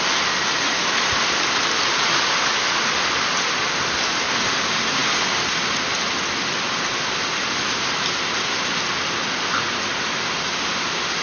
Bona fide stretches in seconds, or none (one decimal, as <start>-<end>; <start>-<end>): 0.0-11.2

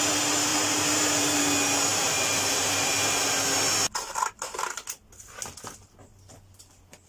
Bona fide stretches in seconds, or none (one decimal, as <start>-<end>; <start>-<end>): 0.0-0.5; 1.4-1.9; 2.9-7.1

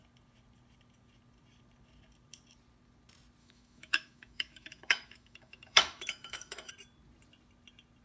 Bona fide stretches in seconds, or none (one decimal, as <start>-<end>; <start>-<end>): 0.0-3.4; 6.7-8.0

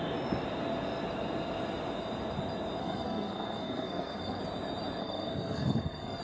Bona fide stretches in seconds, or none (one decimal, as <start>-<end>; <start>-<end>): 0.0-2.8; 4.4-5.0

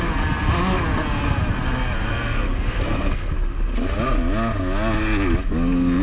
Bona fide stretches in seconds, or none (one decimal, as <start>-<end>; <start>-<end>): 0.0-2.1; 3.3-6.0